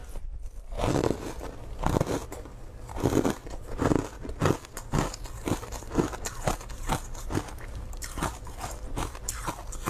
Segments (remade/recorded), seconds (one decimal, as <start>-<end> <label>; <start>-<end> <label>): 0.0-0.8 remade; 0.8-9.9 recorded